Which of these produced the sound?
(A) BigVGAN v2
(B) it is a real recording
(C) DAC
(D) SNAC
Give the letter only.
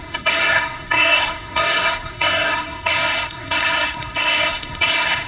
D